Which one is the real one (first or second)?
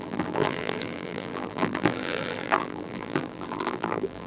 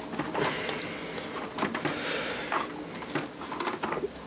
second